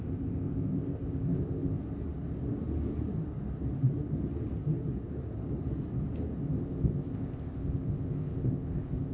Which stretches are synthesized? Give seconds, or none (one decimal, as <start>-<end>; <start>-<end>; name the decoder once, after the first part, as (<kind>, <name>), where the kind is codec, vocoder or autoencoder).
0.0-1.8 (codec, ZipCodec); 6.6-9.1